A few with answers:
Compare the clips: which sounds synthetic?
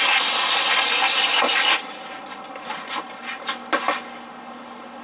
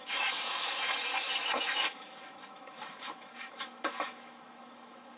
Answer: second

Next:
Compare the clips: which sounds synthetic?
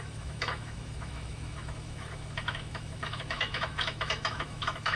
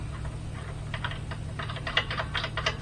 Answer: first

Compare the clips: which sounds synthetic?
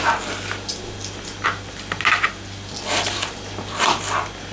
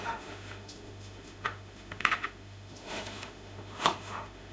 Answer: second